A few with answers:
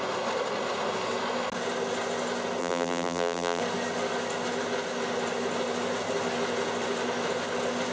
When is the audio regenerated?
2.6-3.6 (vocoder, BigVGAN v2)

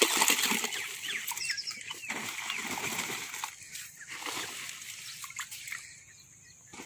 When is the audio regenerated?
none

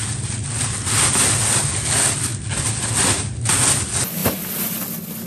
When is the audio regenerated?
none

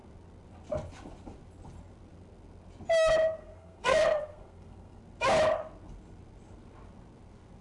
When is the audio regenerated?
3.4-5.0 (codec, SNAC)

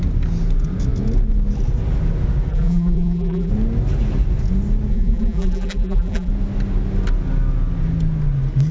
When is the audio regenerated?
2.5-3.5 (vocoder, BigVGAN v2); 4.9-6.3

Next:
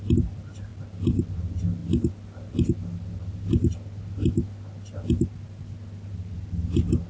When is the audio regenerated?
none

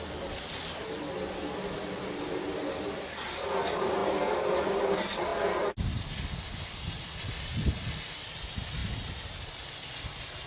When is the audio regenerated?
none

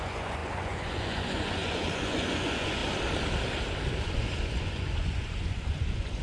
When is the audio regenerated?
0.0-2.8 (vocoder, Vocos); 4.0-6.2